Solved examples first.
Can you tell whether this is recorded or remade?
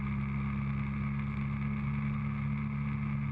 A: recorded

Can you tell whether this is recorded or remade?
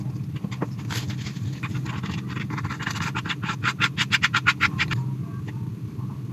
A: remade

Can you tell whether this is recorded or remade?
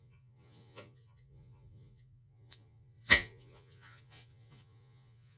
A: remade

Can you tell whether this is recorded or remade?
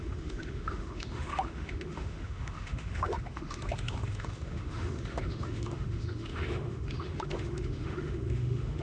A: remade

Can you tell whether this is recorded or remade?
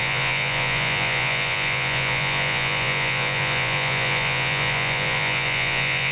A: remade